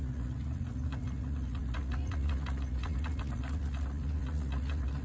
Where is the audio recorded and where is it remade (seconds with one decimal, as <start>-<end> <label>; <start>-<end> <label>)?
0.0-5.0 remade